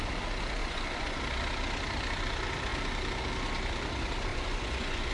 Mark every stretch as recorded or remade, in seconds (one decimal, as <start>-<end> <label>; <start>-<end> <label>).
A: 0.0-0.6 recorded; 0.6-1.2 remade; 1.2-4.3 recorded; 4.3-5.1 remade